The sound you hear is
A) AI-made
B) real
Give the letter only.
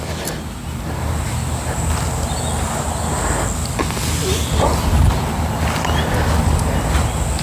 B